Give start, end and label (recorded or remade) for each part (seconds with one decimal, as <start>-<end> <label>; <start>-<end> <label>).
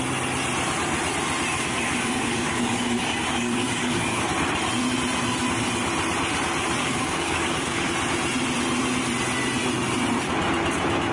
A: 0.0-1.5 recorded; 1.5-4.3 remade; 4.3-6.8 recorded; 6.8-7.9 remade; 7.9-11.1 recorded